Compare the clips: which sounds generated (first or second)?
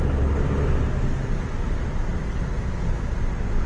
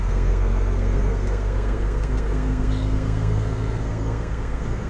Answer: second